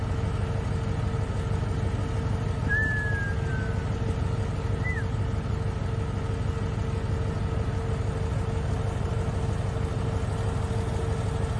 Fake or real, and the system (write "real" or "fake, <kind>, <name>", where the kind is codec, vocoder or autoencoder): real